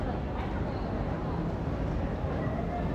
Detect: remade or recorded recorded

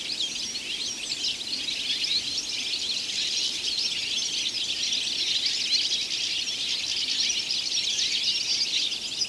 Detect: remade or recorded recorded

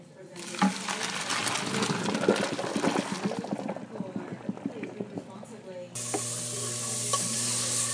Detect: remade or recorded recorded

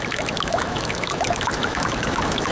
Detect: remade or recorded remade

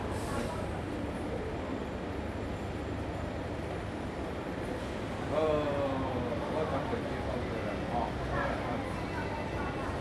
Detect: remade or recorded recorded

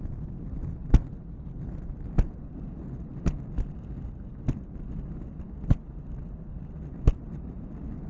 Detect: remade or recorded recorded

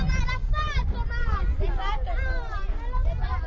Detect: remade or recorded recorded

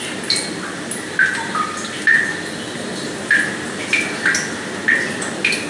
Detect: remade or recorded recorded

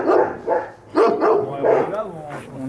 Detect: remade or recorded recorded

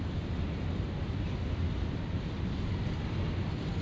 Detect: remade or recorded recorded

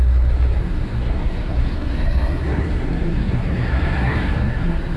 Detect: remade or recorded remade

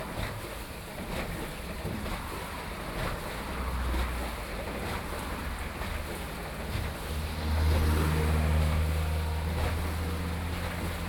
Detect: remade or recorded recorded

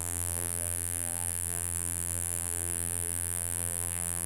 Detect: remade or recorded remade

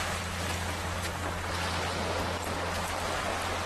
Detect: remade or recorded recorded